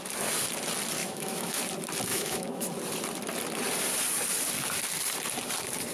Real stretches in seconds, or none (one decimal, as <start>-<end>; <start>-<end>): 0.0-1.0; 1.6-2.1; 2.7-5.9

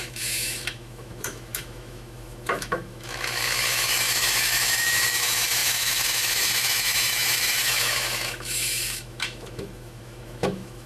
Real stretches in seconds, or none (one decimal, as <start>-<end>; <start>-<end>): none

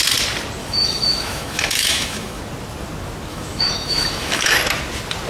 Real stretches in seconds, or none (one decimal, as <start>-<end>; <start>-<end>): 0.0-0.6; 2.4-3.3; 4.6-5.3

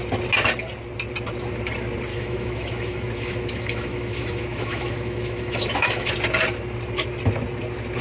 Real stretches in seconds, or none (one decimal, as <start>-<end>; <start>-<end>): 0.0-2.1; 6.1-8.0